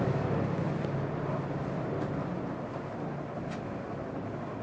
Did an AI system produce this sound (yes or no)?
no